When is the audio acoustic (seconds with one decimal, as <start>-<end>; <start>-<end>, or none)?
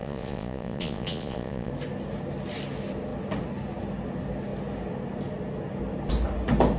1.7-6.8